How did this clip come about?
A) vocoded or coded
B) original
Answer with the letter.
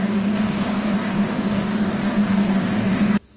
A